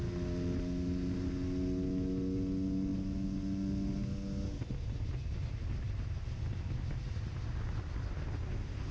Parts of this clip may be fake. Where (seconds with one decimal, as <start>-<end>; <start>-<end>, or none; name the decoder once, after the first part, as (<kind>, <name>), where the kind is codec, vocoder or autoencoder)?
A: none